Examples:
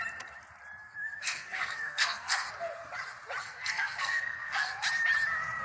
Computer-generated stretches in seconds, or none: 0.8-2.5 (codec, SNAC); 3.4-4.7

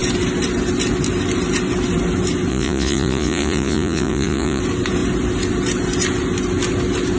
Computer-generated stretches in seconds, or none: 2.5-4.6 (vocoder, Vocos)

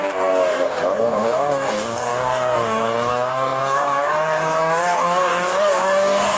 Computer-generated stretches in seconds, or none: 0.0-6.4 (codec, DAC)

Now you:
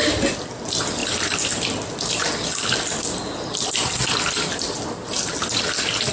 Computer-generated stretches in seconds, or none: none

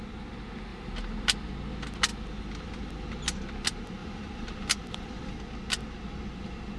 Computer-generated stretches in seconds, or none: 0.7-1.5 (vocoder, BigVGAN v2); 2.1-2.9; 4.0-5.3

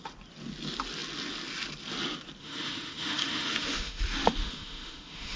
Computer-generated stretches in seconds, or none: 2.4-4.0 (autoencoder, DAC-VAE); 4.4-5.4

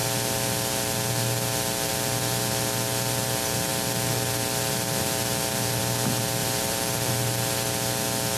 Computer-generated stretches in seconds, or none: 6.4-7.1 (vocoder, BigVGAN v2)